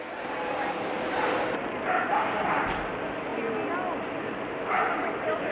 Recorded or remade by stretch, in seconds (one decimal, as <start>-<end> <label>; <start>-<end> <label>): 0.0-5.5 recorded